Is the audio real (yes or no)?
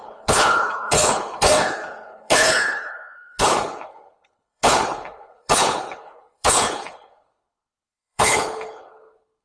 no